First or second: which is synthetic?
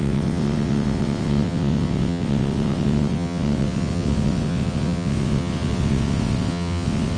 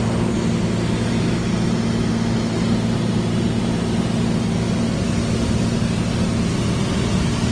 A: first